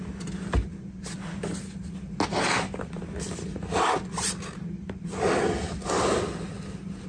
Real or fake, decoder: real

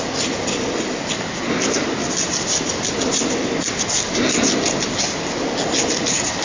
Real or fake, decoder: real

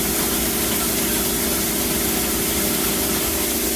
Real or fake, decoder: real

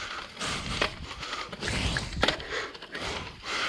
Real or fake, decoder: real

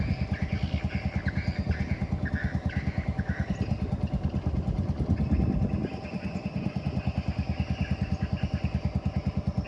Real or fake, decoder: real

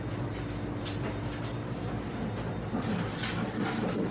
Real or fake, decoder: real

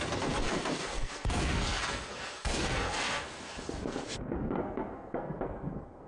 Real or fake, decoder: fake, codec, SNAC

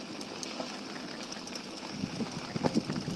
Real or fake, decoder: real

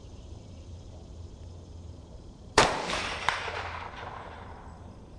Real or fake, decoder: fake, vocoder, BigVGAN v2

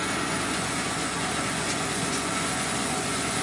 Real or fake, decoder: fake, vocoder, Vocos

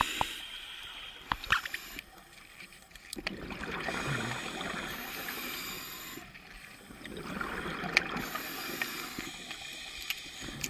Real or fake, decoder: real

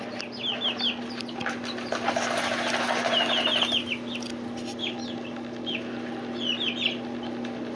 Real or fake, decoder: real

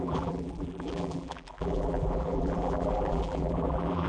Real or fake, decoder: fake, vocoder, BigVGAN v2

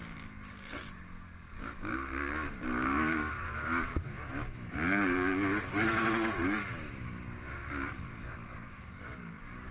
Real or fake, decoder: fake, codec, DAC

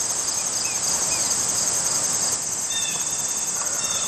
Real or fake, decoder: real